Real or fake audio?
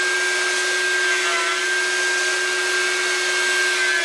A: real